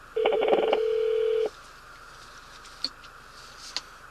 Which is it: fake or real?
real